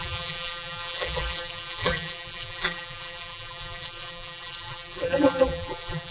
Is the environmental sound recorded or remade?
remade